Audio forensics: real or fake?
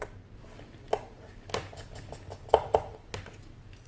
real